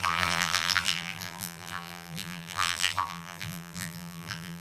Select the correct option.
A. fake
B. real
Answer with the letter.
A